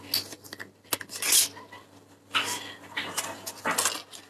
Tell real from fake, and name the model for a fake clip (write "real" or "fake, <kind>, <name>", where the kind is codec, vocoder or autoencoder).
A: real